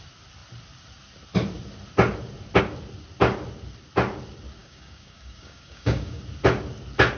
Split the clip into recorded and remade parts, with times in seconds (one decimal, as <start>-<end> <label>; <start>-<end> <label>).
0.0-4.6 recorded; 4.6-6.2 remade; 6.2-7.2 recorded